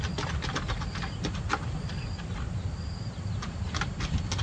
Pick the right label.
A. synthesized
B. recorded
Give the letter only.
B